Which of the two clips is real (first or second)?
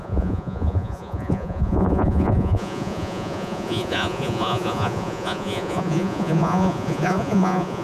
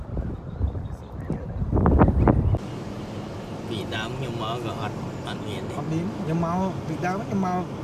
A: second